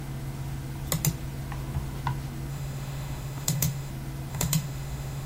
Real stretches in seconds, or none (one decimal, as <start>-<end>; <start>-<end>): 0.0-2.5; 3.9-4.3